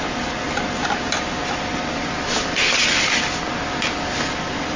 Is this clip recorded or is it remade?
recorded